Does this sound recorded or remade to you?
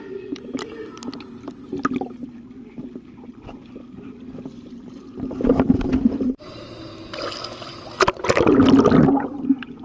recorded